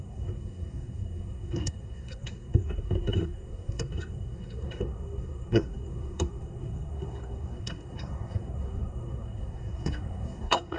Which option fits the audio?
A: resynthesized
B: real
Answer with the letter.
A